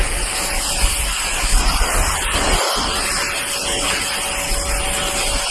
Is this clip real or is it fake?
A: real